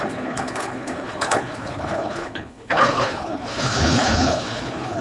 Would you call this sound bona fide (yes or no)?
no